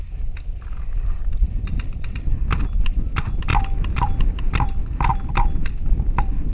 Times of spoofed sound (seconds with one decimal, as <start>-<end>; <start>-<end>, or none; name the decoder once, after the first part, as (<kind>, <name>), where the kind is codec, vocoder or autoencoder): none